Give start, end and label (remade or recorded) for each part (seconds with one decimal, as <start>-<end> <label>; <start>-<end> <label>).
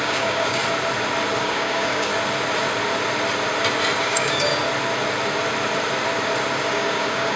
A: 0.0-0.6 remade; 0.6-1.4 recorded; 1.4-2.1 remade; 2.1-4.0 recorded; 4.0-4.5 remade; 4.5-6.7 recorded; 6.7-7.4 remade